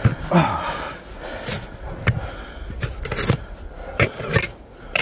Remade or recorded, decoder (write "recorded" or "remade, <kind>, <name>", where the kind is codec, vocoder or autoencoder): recorded